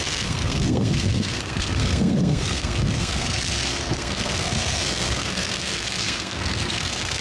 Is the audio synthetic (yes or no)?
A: yes